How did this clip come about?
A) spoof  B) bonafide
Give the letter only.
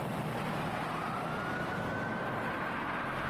B